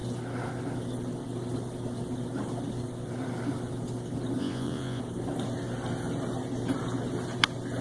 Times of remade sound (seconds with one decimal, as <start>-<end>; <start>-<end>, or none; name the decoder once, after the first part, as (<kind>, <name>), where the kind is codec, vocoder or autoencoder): 4.4-5.0 (vocoder, Vocos)